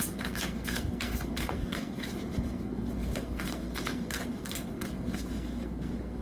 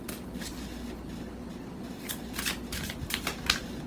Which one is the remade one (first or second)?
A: first